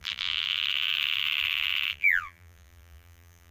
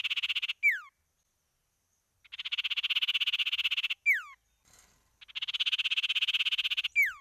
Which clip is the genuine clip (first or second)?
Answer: second